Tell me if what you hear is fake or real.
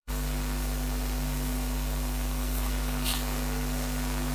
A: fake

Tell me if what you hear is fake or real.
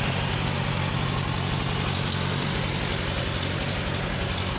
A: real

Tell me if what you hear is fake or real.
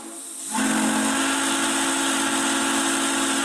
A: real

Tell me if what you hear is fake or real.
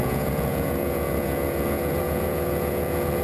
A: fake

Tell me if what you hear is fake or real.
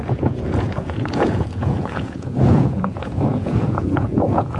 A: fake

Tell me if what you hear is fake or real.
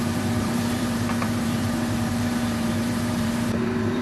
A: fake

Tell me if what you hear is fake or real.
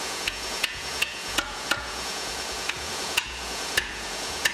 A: fake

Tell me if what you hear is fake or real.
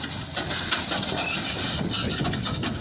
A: real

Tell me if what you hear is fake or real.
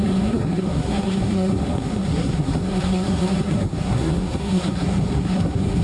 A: fake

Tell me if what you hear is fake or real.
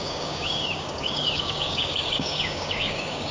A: fake